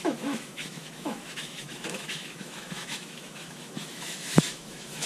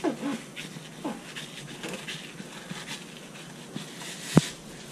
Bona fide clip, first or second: second